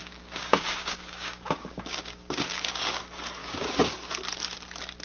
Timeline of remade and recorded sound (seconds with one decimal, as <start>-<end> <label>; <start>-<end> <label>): 0.0-3.0 remade; 3.0-3.4 recorded; 3.4-4.1 remade; 4.1-5.0 recorded